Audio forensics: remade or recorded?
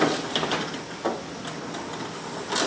recorded